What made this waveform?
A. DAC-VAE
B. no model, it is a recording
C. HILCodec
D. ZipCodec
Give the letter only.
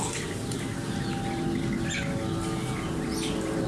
B